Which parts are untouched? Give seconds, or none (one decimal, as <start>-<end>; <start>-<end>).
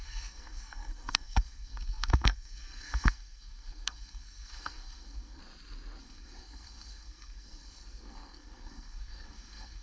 5.4-6.0